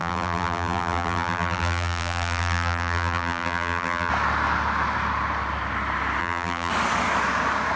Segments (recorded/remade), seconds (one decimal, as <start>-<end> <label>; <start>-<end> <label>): 0.0-4.1 remade; 4.1-6.2 recorded; 6.2-6.7 remade; 6.7-7.8 recorded